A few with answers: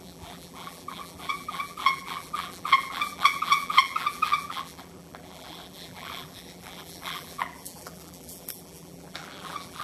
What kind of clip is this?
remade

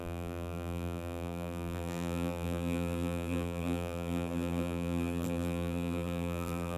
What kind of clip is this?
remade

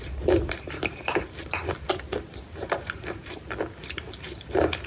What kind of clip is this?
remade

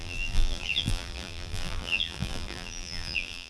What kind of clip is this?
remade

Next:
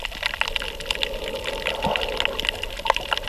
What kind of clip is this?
recorded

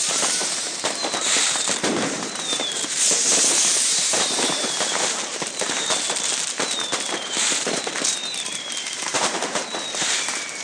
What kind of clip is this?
remade